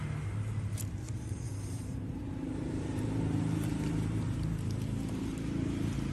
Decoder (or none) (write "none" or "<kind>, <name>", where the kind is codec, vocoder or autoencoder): vocoder, BigVGAN v2